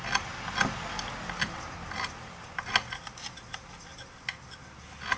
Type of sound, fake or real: real